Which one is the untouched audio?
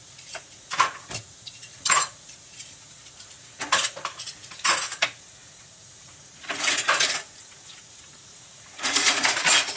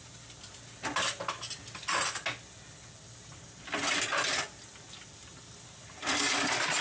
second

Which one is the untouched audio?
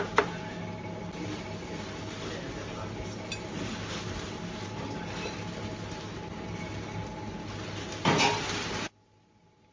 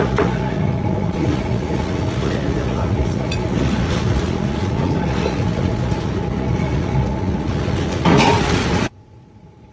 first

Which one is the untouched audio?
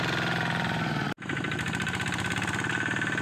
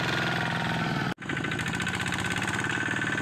second